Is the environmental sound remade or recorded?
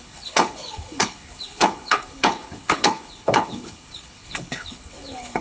remade